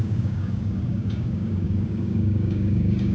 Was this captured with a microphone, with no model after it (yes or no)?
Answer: no